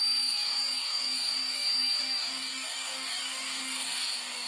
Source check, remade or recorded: remade